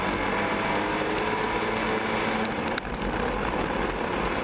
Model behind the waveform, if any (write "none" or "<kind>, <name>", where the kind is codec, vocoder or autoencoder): none